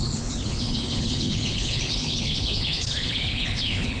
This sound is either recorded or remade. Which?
remade